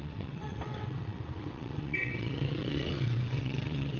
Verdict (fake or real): fake